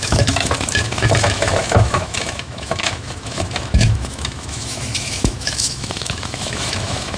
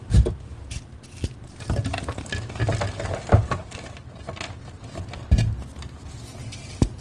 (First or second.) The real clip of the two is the second